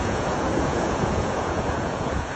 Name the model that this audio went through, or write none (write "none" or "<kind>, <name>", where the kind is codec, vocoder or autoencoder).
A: vocoder, Vocos